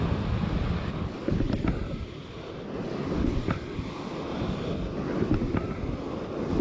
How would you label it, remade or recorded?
recorded